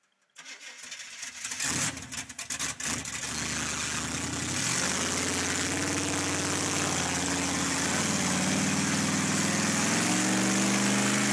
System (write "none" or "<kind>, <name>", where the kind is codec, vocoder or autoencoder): none